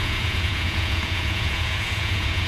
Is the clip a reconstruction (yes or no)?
yes